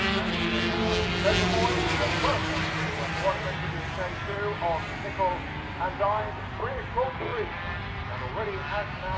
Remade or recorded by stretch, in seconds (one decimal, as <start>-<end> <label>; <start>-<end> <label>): 0.0-9.2 recorded